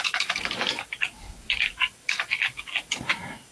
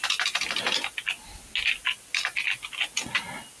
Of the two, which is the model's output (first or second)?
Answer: first